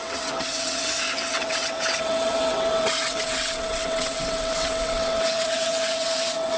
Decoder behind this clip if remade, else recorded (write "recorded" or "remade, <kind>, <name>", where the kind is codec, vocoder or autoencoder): remade, vocoder, WaveNeXt